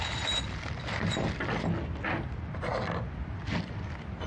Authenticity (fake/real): real